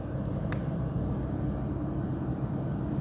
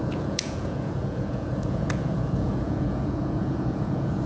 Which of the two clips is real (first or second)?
first